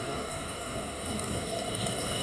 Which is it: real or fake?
fake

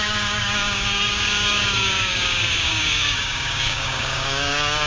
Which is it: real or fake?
fake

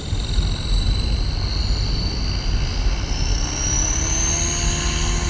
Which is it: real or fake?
real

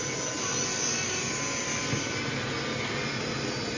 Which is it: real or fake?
real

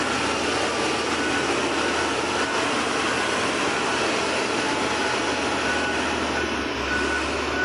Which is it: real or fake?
real